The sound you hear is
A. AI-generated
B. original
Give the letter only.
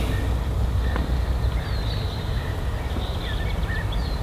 B